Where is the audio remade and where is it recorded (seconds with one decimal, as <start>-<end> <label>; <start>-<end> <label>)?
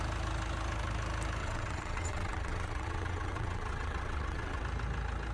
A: 0.0-1.4 recorded; 1.4-4.6 remade; 4.6-5.3 recorded